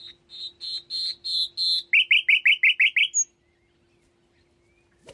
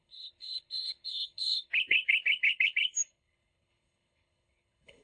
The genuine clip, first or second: first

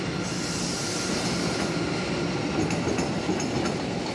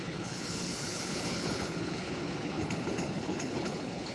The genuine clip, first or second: first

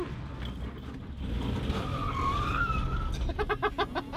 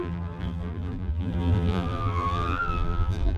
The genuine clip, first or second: first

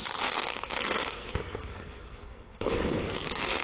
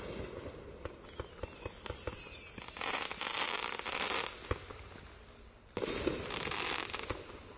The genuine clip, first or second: second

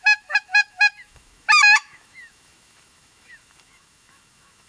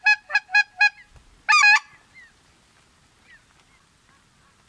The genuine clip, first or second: second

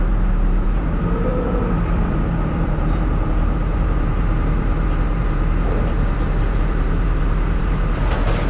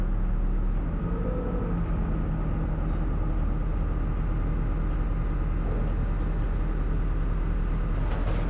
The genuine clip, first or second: second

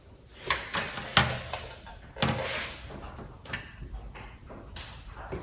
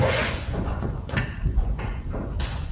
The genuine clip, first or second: first